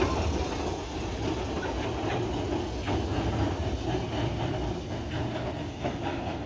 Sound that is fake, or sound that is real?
real